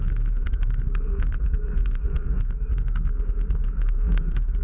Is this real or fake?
fake